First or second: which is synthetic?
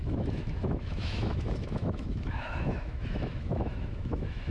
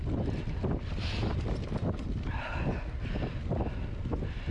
first